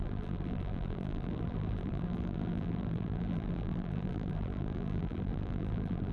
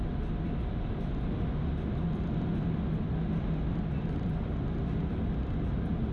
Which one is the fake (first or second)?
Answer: first